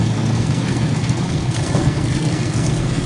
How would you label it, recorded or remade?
remade